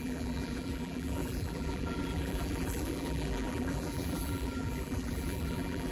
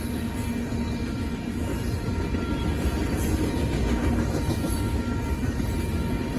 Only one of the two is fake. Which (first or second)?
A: first